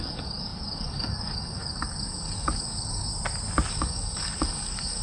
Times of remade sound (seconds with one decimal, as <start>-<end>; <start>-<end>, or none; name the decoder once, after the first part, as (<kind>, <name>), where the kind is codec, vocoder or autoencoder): 0.0-3.1 (codec, DAC); 3.7-5.0